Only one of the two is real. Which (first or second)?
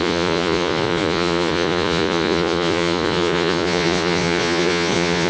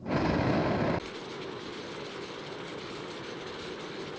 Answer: second